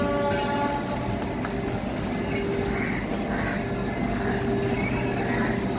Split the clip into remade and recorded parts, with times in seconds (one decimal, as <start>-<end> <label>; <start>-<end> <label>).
0.0-5.8 recorded